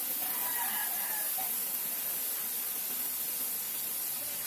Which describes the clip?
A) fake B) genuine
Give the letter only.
B